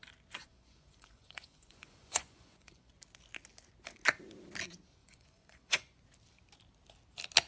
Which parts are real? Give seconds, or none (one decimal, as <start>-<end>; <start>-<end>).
0.0-0.4; 2.9-5.0; 6.0-7.5